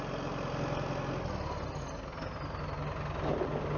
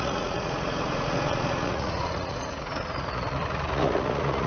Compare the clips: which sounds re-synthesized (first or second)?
second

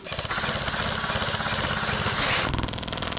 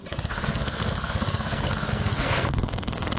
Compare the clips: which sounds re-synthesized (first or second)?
second